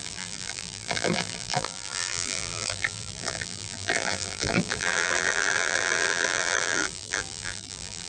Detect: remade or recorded remade